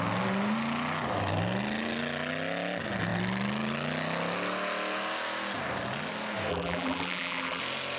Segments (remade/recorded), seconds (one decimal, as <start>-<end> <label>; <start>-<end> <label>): 0.0-6.5 recorded; 6.5-7.6 remade; 7.6-8.0 recorded